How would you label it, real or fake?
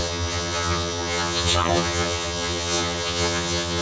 fake